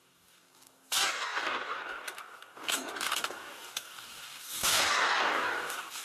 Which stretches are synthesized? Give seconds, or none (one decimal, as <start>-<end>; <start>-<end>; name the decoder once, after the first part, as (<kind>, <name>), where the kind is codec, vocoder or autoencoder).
0.0-6.0 (codec, DAC)